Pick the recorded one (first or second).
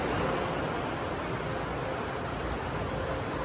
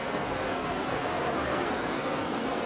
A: first